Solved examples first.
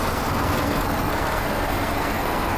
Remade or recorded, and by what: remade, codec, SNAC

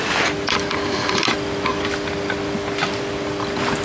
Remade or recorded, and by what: recorded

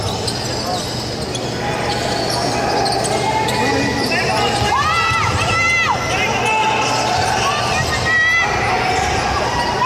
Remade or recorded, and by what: recorded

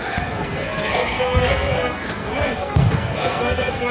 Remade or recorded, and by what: remade, codec, SNAC